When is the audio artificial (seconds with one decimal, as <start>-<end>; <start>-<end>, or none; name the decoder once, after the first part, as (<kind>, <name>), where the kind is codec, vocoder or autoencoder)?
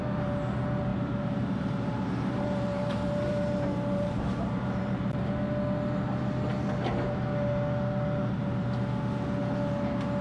0.9-5.3 (vocoder, BigVGAN v2)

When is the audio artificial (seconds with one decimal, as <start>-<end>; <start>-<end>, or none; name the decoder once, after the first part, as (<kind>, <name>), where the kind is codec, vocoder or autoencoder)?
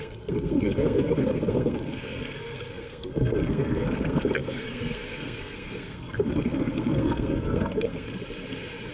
0.0-8.1 (codec, SNAC)